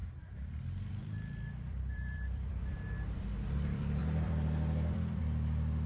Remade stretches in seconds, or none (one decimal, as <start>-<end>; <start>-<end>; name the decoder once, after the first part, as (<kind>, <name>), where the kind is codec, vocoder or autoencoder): 0.0-5.9 (vocoder, BigVGAN v2)